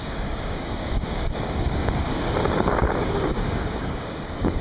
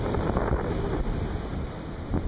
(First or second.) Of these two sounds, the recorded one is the second